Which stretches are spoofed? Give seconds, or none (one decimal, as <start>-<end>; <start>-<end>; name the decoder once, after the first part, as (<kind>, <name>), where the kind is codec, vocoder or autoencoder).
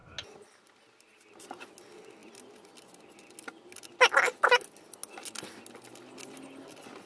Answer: none